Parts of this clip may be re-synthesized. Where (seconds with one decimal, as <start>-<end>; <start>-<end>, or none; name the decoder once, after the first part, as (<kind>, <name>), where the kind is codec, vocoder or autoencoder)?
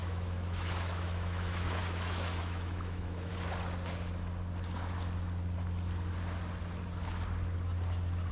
0.0-3.3 (autoencoder, DAC-VAE)